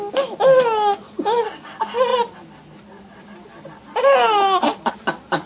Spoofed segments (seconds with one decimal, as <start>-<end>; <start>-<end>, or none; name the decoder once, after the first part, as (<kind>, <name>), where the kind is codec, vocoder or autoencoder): none

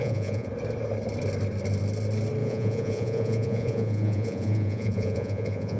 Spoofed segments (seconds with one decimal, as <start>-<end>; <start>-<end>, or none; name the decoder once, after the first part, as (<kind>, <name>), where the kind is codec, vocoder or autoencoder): 0.0-0.5 (vocoder, Vocos); 2.4-5.8

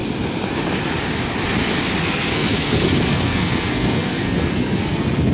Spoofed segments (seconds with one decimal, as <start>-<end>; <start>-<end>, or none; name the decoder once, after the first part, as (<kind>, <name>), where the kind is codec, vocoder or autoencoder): 2.0-5.3 (codec, SNAC)

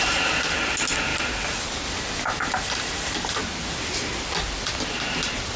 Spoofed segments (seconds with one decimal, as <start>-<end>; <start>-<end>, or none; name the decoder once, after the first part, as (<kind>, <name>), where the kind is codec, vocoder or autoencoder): none

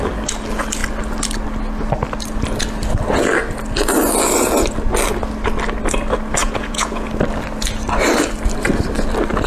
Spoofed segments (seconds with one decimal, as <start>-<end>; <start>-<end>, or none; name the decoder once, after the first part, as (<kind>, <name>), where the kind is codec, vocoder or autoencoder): 6.4-7.1 (vocoder, Vocos)

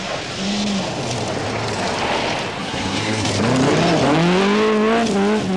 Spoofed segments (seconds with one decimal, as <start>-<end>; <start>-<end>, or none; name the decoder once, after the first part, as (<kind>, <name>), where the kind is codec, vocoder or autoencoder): 2.6-3.3 (codec, SNAC)